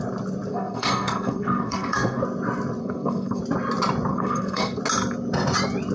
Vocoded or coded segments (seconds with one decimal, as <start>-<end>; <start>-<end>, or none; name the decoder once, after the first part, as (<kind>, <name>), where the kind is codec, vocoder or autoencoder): 0.5-2.2 (codec, SNAC); 2.8-3.4; 4.1-4.8